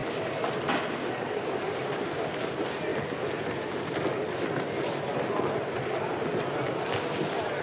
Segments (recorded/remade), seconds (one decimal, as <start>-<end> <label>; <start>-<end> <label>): 0.0-7.6 recorded